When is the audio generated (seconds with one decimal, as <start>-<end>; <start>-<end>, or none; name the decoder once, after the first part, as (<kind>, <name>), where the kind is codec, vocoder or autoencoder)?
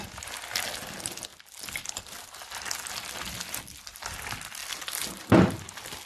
1.3-2.0 (vocoder, BigVGAN v2); 4.6-5.5